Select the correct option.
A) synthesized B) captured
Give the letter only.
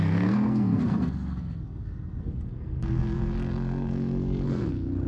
A